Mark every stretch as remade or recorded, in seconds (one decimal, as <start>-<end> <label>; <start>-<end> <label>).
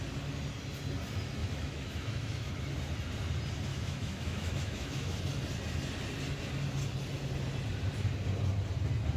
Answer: 0.0-1.4 recorded; 1.4-2.5 remade; 2.5-3.7 recorded; 3.7-5.2 remade; 5.2-9.2 recorded